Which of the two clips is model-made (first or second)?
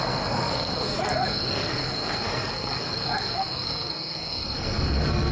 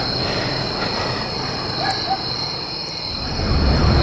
first